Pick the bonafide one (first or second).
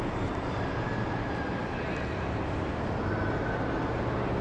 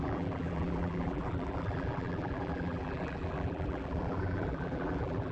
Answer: first